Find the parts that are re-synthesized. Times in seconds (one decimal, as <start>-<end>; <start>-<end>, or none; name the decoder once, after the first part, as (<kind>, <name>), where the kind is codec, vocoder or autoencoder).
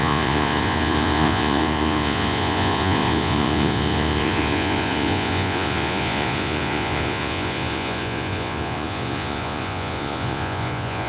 0.0-11.1 (vocoder, Vocos)